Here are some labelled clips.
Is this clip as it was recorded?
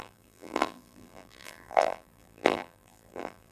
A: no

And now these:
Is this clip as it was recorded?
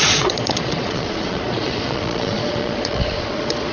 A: no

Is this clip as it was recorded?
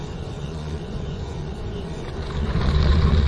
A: no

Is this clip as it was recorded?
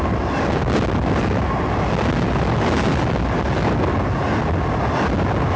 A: yes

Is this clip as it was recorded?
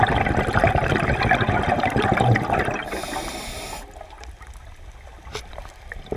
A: yes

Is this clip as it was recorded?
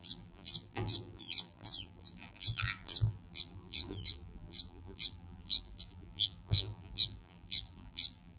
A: no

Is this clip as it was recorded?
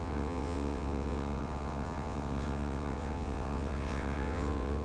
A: no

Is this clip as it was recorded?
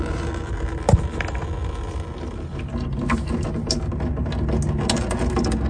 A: yes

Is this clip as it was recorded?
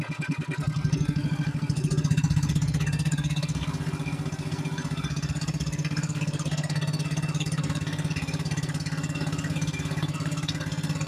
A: no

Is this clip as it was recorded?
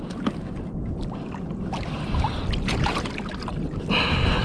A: yes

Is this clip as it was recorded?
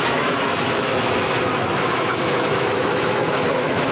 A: no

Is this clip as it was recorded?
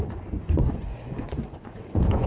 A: no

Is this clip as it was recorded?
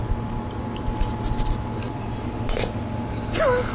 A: yes